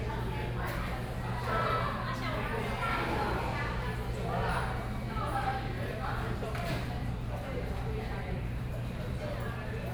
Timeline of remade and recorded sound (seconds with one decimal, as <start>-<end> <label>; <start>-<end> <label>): 0.0-4.4 recorded; 4.4-9.2 remade; 9.2-9.9 recorded